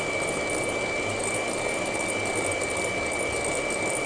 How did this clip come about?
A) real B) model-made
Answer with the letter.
A